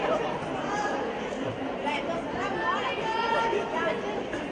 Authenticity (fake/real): real